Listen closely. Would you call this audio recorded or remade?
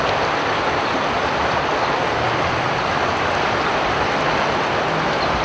recorded